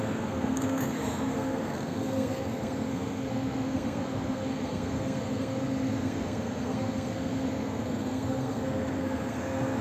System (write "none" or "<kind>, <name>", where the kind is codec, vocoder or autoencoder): codec, SNAC